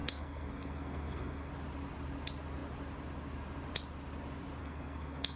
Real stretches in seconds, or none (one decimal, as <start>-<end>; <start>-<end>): 1.5-4.6

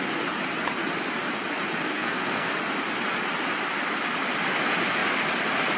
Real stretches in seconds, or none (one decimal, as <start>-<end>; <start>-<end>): 0.0-1.8; 2.5-5.8

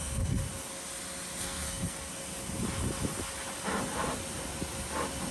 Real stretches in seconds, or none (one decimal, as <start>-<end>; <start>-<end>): 0.4-1.4; 2.1-5.3

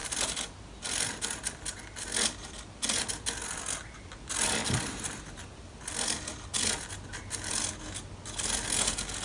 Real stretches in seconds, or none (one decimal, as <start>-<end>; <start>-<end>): 0.0-9.2

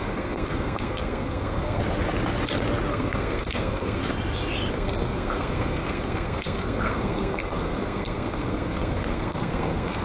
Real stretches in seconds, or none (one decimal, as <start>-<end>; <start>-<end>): 1.8-2.9; 4.0-4.7